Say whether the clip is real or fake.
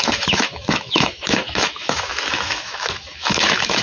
fake